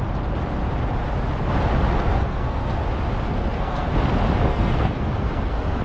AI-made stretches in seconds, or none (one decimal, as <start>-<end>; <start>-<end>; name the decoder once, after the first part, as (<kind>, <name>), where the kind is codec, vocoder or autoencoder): 2.1-2.8 (codec, SNAC); 3.4-3.9; 4.5-5.8

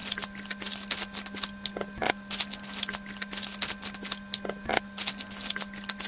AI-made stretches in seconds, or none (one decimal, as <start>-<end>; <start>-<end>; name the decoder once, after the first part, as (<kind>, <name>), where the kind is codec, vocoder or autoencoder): none

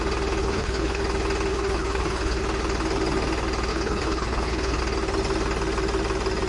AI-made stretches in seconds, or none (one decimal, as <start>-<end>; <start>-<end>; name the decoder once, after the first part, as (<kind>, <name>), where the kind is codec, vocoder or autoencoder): 0.4-1.0 (codec, HILCodec); 1.5-2.4; 3.7-4.8

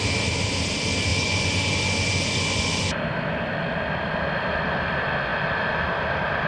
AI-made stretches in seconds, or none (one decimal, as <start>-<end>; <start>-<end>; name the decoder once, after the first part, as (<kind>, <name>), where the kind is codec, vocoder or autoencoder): 1.1-2.9 (vocoder, Vocos)